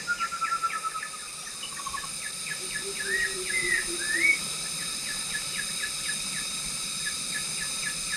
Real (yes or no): yes